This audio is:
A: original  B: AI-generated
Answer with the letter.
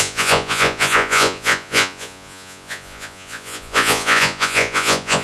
B